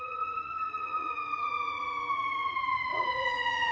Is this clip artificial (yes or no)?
yes